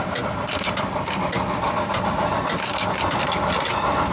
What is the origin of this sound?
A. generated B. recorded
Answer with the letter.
A